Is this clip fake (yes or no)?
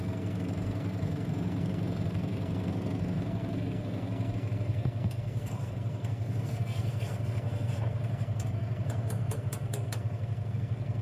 yes